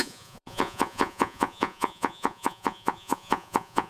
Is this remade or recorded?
remade